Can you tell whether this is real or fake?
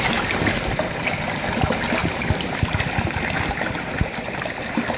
real